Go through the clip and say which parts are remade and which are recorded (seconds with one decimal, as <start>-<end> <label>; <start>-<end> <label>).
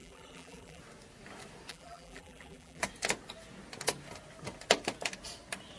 0.0-0.8 remade; 0.8-1.7 recorded; 1.7-2.8 remade; 2.8-5.8 recorded